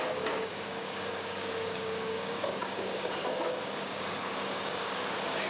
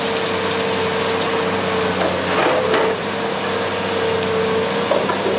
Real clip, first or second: second